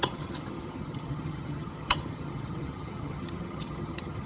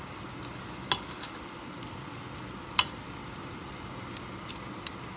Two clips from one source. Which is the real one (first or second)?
second